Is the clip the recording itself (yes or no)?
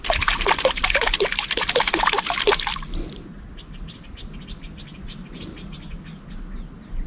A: yes